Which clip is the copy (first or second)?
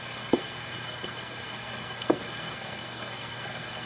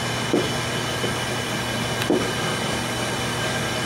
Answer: first